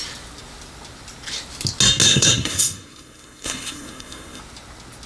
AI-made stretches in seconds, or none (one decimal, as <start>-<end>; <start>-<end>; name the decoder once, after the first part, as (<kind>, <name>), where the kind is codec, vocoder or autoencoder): 2.0-4.4 (codec, SNAC)